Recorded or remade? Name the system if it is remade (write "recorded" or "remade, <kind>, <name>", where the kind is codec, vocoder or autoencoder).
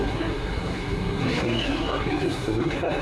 remade, codec, SNAC